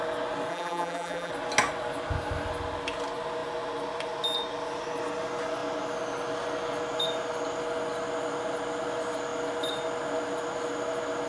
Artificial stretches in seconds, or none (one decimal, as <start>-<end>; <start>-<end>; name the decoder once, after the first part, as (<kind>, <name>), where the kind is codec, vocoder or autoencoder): 0.5-1.3 (vocoder, BigVGAN v2)